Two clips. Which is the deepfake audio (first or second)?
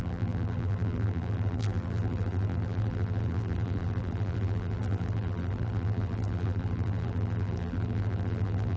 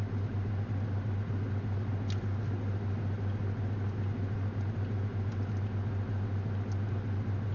first